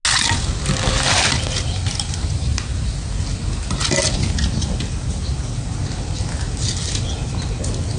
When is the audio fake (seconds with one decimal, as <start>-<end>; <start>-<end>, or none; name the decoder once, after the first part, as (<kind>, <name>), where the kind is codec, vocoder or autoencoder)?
none